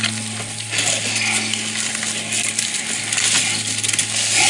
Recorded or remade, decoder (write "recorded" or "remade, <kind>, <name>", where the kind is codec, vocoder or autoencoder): recorded